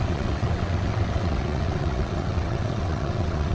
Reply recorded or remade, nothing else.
remade